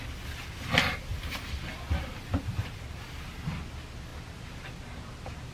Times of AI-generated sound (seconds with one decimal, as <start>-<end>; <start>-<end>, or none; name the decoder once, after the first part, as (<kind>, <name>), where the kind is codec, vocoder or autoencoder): none